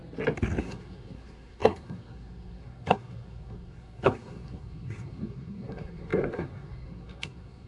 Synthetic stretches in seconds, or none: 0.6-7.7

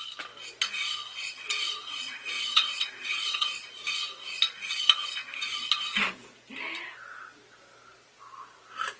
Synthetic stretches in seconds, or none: 1.2-3.7

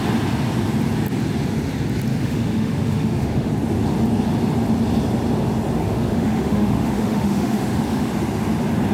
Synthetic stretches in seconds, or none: 2.1-3.5; 5.8-8.1

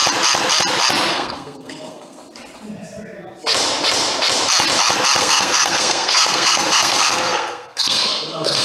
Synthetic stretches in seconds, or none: 1.1-2.2; 5.2-8.6

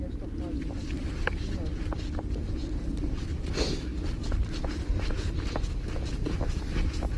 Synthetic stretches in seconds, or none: none

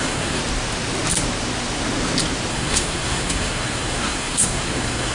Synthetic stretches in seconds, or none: 0.0-0.4; 2.5-5.1

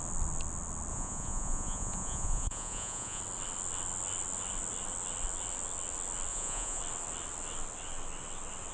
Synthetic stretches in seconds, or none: 0.9-3.2; 6.3-6.8

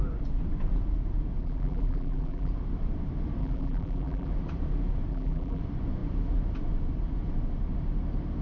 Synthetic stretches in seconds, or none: 1.4-2.5; 3.4-4.3; 5.1-5.6